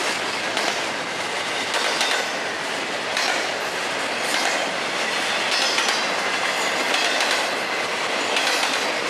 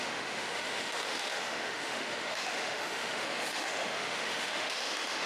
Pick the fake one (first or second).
second